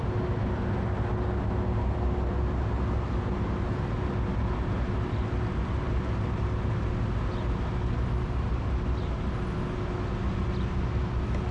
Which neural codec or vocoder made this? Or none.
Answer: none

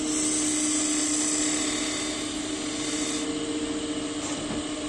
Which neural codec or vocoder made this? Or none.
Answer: none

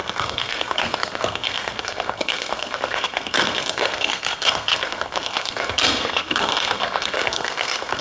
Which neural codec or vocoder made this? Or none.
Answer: codec, SNAC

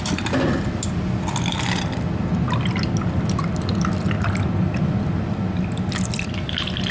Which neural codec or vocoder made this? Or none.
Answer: none